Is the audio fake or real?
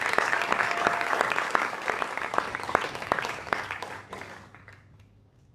fake